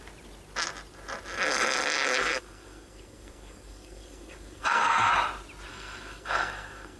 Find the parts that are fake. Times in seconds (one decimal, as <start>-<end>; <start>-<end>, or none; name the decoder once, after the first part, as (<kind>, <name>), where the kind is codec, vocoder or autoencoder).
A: 2.2-5.1 (codec, SNAC); 5.7-7.0